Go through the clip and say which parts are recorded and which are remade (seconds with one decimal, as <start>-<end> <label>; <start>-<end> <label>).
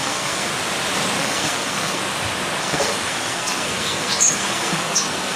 0.0-0.5 remade; 0.5-1.2 recorded; 1.2-2.0 remade; 2.0-2.6 recorded; 2.6-5.4 remade